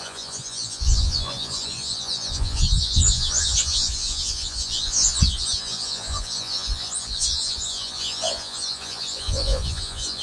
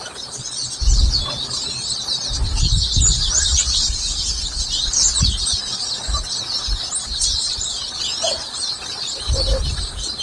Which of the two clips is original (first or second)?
second